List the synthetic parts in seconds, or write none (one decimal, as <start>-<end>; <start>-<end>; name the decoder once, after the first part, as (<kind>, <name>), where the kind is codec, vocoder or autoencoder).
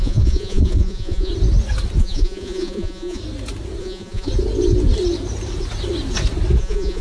0.0-1.3 (vocoder, Vocos); 2.0-3.2; 3.8-4.3; 6.6-7.0